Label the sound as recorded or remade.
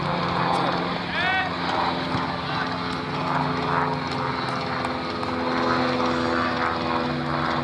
recorded